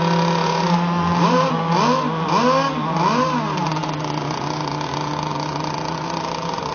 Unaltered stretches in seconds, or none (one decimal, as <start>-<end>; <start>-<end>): 0.0-0.4; 1.5-6.7

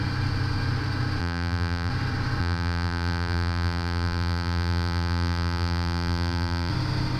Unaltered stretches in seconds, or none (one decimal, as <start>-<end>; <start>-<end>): 0.0-1.2; 1.9-2.4; 6.7-7.2

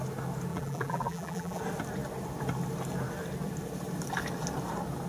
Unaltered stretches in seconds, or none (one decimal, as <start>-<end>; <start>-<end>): 0.0-0.5; 1.6-5.1

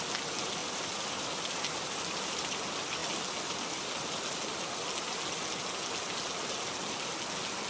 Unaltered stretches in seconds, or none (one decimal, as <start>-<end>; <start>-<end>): 0.0-0.6; 2.6-7.7

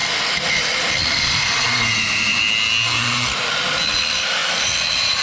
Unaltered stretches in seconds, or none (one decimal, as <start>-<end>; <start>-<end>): 0.6-1.0; 2.4-4.4

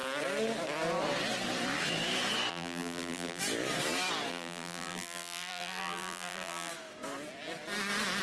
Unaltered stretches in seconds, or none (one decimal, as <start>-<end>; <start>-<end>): 0.0-2.5; 3.4-4.3; 6.7-8.2